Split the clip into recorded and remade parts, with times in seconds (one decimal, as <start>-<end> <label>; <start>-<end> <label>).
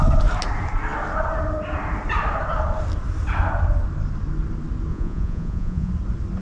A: 0.0-4.9 recorded; 4.9-5.9 remade; 5.9-6.4 recorded